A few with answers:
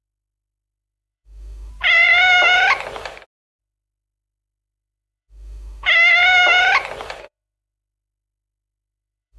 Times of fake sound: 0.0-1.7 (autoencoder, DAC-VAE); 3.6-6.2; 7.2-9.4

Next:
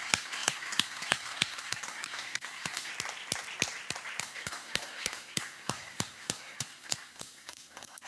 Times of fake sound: 0.0-2.9 (codec, SNAC); 4.2-8.1